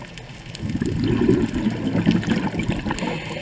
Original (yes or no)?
yes